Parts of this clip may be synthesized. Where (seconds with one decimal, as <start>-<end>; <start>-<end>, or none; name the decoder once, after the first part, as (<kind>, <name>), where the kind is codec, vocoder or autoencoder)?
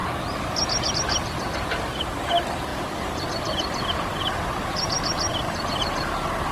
2.7-5.4 (vocoder, BigVGAN v2)